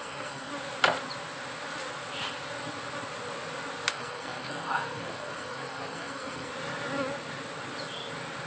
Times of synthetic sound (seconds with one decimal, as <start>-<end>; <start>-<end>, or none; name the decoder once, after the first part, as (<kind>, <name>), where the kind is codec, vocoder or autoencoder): 0.0-0.5 (codec, SNAC); 3.9-6.5